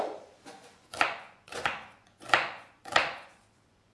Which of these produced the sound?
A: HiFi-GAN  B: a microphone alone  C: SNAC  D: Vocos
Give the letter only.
D